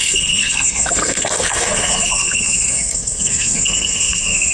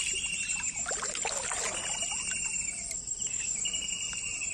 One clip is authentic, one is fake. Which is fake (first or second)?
first